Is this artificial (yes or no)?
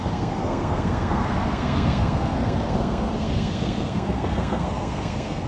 yes